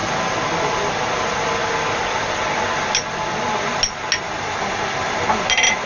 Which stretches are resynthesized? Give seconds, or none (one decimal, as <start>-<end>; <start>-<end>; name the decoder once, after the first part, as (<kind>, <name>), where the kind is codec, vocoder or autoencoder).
none